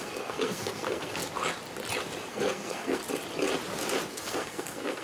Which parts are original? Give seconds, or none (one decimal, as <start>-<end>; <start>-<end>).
1.2-2.3; 3.0-4.1